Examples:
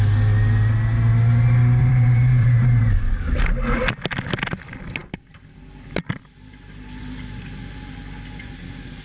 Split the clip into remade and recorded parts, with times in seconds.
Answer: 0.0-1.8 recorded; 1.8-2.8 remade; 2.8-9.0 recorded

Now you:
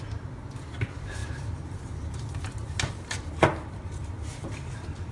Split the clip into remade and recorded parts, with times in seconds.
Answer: 0.0-5.1 recorded

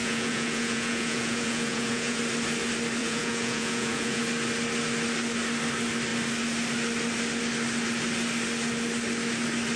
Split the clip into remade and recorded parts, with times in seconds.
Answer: 0.0-2.2 remade; 2.2-3.0 recorded; 3.0-4.2 remade; 4.2-9.8 recorded

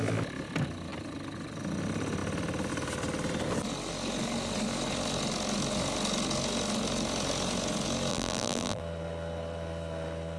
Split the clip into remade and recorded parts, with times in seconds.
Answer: 0.0-8.1 recorded; 8.1-8.8 remade; 8.8-10.4 recorded

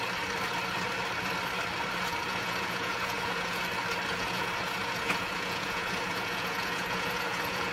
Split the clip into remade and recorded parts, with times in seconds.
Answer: 0.0-2.0 recorded; 2.0-3.6 remade; 3.6-4.1 recorded; 4.1-7.7 remade

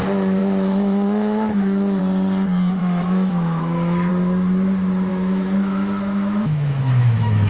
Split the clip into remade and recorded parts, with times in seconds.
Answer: 0.0-0.4 recorded; 0.4-2.0 remade; 2.0-2.8 recorded; 2.8-4.1 remade; 4.1-5.1 recorded; 5.1-7.5 remade

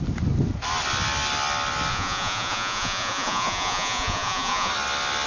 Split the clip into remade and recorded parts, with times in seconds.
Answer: 0.0-1.9 recorded; 1.9-4.7 remade; 4.7-5.3 recorded